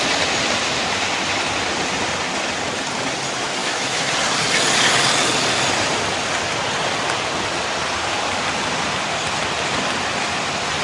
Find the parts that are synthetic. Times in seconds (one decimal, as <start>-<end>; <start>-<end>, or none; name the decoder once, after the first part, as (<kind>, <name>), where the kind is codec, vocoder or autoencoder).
3.6-4.1 (autoencoder, DAC-VAE)